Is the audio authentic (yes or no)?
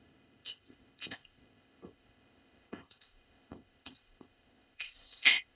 no